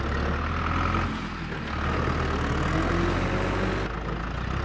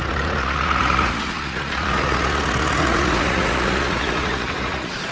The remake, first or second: second